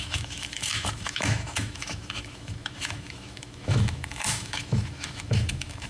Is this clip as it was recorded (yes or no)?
no